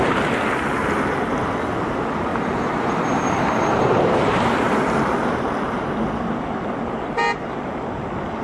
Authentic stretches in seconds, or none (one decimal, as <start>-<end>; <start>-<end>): 0.0-2.3; 5.4-8.4